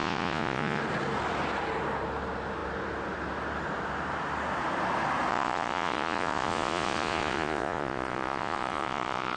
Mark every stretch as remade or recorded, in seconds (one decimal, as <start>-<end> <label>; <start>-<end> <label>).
0.0-0.8 remade; 0.8-5.3 recorded; 5.3-9.4 remade